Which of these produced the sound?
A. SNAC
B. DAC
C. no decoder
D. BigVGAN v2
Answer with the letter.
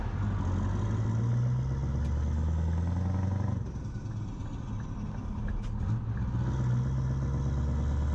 C